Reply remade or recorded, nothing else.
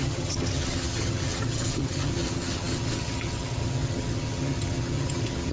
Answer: remade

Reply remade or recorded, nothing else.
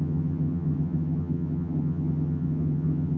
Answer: remade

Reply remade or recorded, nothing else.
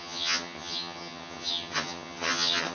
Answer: remade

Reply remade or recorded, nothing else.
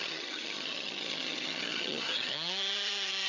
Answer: remade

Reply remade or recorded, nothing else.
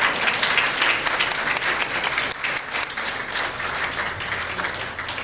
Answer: recorded